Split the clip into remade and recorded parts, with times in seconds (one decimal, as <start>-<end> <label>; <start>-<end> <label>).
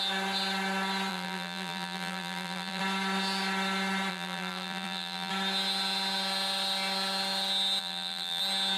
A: 0.0-1.1 recorded; 1.1-2.8 remade; 2.8-4.1 recorded; 4.1-5.3 remade; 5.3-7.8 recorded; 7.8-8.4 remade; 8.4-8.8 recorded